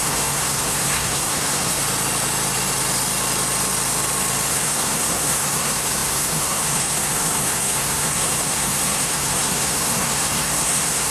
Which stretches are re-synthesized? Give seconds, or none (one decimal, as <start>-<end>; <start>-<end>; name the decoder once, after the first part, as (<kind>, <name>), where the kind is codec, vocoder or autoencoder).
0.0-1.8 (codec, SNAC); 4.5-11.1